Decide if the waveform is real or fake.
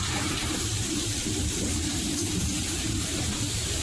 fake